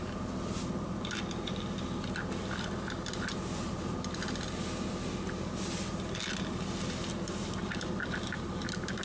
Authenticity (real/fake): real